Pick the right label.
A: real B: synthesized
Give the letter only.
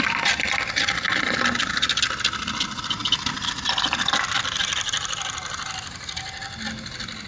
A